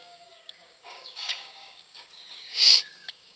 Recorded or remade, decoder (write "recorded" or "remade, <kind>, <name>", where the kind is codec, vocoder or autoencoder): remade, codec, DAC